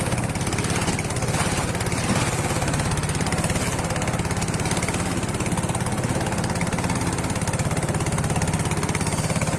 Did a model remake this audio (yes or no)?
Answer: no